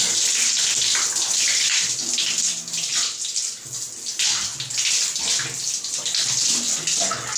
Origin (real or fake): real